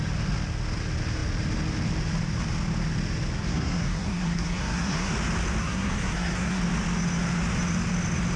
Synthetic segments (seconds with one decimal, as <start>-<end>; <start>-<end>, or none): 3.5-5.1; 5.6-6.6